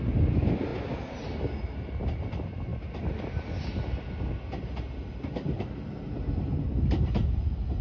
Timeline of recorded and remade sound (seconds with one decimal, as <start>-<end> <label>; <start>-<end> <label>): 0.0-7.8 recorded